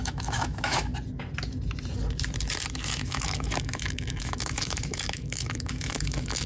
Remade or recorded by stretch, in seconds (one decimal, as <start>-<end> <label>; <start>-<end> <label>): 0.0-0.9 remade; 0.9-2.7 recorded; 2.7-6.5 remade